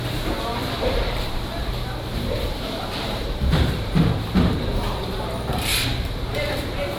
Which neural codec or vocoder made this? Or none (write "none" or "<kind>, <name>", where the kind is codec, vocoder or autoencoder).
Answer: vocoder, BigVGAN v2